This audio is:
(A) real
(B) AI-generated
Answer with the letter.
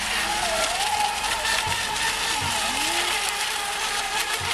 A